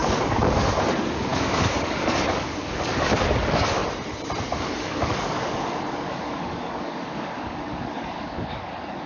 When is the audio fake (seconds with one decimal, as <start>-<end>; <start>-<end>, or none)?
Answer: 0.0-3.8; 4.6-9.1